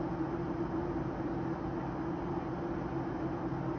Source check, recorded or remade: recorded